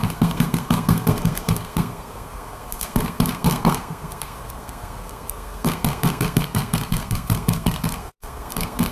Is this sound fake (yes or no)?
yes